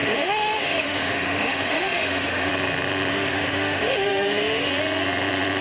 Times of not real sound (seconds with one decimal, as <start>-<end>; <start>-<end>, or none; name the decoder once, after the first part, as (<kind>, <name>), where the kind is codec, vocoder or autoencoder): 0.0-2.5 (autoencoder, DAC-VAE); 3.1-4.7